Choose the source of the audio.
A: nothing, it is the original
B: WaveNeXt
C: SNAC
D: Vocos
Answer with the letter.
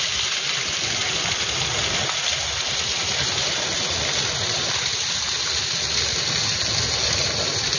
A